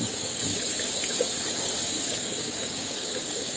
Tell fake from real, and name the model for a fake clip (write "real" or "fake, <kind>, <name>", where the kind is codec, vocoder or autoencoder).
fake, codec, DAC